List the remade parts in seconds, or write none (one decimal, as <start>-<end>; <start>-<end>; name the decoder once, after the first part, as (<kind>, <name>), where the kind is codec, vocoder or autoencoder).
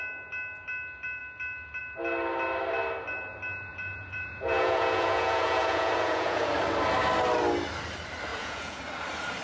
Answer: 3.7-6.5 (vocoder, Vocos); 8.3-8.8